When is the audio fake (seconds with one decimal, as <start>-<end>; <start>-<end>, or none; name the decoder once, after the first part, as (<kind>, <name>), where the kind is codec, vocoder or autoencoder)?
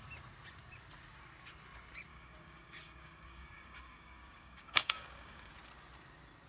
2.1-5.5 (codec, DAC)